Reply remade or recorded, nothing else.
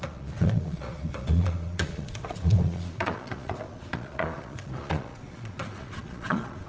remade